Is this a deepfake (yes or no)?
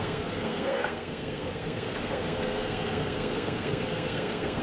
yes